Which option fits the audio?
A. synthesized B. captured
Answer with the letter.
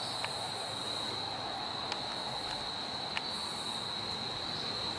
B